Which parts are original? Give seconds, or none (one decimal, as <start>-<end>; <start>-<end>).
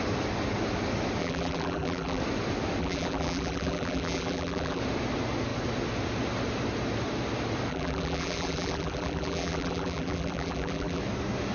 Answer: 0.0-1.2; 2.2-2.8; 4.8-7.7; 11.0-11.5